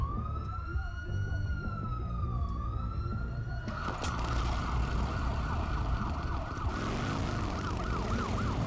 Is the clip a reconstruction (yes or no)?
no